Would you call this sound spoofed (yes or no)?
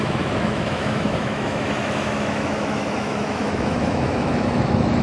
yes